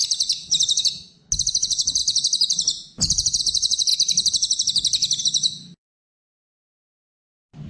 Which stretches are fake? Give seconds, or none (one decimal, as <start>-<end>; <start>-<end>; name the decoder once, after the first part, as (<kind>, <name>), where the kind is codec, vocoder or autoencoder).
0.0-0.8 (vocoder, BigVGAN v2); 3.9-5.2